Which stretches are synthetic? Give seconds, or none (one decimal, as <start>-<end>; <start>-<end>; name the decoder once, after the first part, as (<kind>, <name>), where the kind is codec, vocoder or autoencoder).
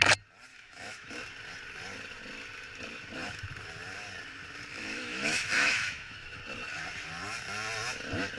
0.5-1.1 (autoencoder, DAC-VAE); 4.7-6.4